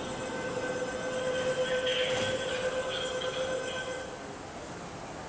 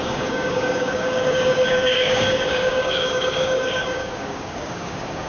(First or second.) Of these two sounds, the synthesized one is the second